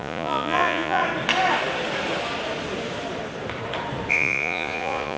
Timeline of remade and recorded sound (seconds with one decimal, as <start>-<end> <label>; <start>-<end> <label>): 0.0-1.0 remade; 1.0-4.1 recorded; 4.1-5.2 remade